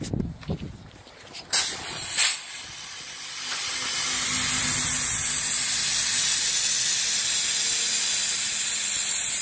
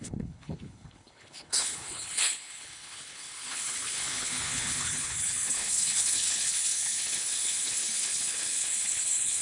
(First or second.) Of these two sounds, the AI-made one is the second